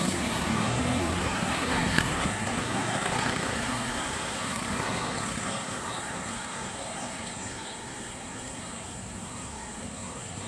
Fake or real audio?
fake